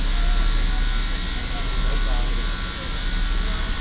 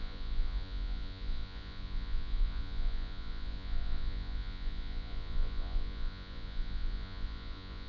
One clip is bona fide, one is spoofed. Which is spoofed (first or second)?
second